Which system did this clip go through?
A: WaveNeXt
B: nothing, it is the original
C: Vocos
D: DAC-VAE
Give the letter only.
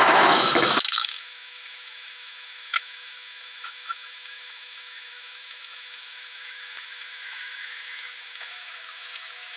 D